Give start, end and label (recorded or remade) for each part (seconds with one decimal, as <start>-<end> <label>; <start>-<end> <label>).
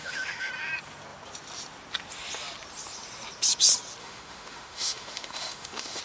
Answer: 0.0-0.5 remade; 0.5-4.0 recorded; 4.0-6.0 remade